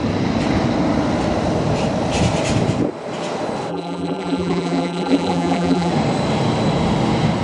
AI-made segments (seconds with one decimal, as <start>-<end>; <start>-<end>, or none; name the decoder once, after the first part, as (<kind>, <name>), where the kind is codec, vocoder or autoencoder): 3.7-5.9 (vocoder, BigVGAN v2)